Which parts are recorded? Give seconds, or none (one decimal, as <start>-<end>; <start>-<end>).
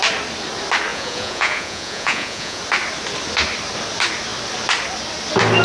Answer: 0.0-0.9; 2.6-5.6